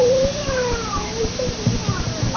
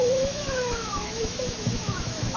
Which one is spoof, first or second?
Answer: second